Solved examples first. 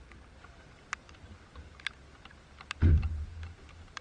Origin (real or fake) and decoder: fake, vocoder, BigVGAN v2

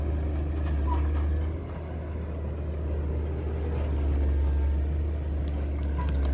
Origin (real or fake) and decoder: real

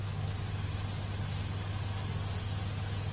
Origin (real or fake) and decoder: real